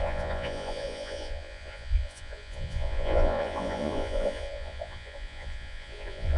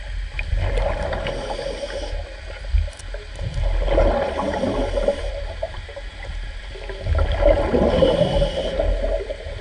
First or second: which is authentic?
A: second